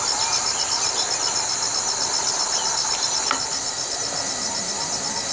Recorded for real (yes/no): yes